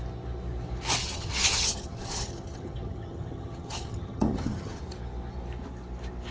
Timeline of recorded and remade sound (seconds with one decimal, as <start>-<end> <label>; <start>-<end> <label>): 0.0-1.0 recorded; 1.0-4.8 remade; 4.8-6.3 recorded